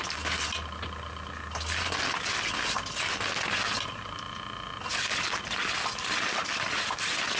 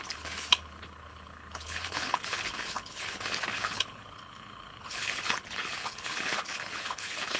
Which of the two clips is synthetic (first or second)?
second